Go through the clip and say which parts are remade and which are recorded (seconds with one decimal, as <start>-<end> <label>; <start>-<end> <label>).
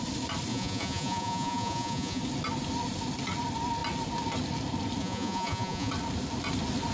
0.0-0.5 recorded; 0.5-2.2 remade; 2.2-5.0 recorded; 5.0-5.9 remade; 5.9-6.9 recorded